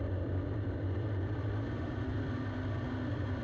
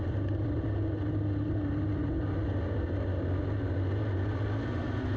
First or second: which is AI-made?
first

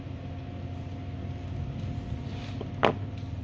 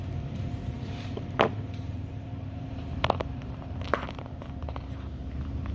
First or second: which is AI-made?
second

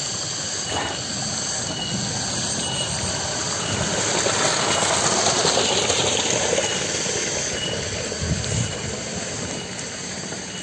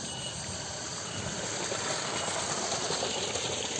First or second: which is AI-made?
second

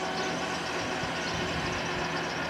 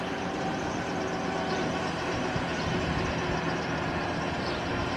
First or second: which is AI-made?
second